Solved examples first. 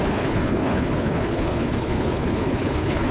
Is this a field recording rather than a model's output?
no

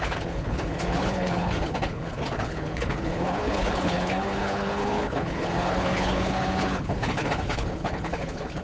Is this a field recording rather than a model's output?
no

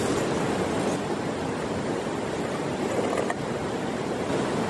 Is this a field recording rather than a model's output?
yes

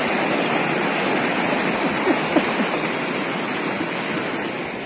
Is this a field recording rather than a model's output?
yes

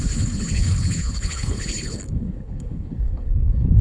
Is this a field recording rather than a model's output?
no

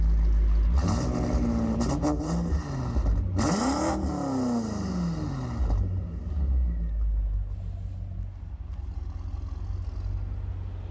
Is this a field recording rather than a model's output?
yes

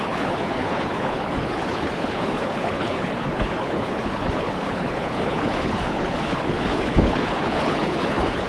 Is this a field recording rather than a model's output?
no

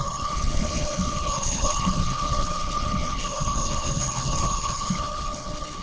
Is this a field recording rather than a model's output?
no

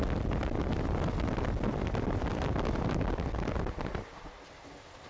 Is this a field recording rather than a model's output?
yes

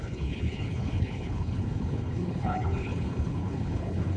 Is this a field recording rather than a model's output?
no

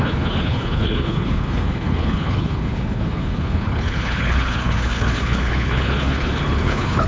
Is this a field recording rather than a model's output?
no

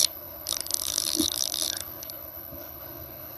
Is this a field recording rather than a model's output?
no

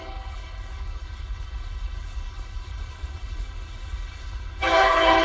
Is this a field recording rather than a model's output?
no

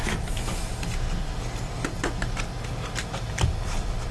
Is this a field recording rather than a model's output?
yes